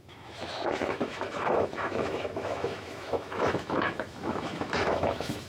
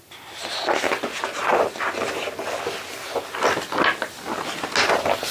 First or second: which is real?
second